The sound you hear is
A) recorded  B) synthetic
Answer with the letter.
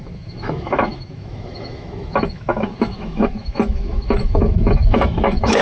B